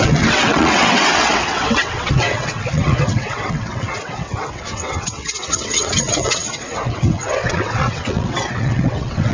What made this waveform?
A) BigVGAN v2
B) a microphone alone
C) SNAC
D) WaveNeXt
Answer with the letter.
D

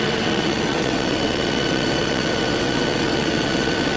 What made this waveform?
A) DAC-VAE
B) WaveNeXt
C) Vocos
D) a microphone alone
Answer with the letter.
B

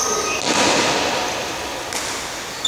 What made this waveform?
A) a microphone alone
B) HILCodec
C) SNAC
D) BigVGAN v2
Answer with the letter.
A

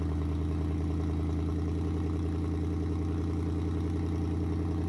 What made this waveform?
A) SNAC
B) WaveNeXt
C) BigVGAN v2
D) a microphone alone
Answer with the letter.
D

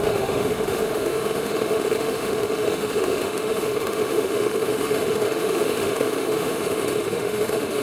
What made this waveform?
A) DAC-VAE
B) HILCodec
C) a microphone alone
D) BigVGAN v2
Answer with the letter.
A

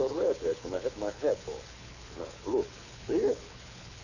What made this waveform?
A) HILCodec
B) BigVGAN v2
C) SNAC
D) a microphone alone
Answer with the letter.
A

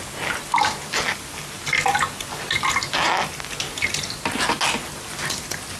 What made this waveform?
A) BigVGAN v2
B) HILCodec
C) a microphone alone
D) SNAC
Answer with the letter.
C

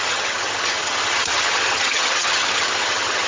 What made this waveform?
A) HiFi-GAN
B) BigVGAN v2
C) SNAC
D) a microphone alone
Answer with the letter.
A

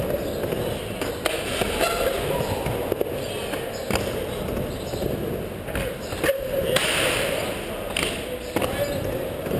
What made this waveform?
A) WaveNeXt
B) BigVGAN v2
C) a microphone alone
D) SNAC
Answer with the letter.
C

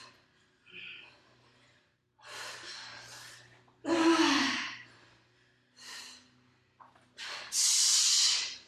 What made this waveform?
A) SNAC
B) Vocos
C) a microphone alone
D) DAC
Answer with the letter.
C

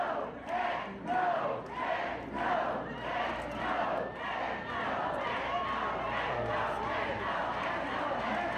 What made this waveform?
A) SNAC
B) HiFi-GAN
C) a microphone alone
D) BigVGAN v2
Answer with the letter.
C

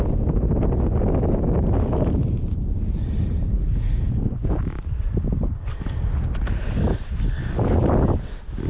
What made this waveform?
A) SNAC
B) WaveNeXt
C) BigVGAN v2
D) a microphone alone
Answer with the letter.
D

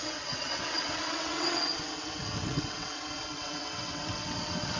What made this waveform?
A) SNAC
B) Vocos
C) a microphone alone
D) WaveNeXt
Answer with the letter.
D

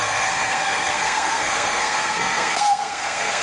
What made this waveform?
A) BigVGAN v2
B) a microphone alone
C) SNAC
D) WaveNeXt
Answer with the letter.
C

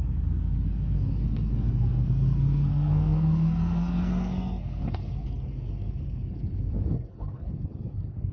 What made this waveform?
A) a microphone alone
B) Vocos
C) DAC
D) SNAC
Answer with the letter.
D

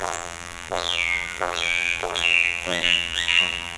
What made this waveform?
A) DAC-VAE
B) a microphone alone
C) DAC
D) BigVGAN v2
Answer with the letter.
D